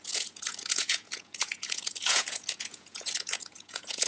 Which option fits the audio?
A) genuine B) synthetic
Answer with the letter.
B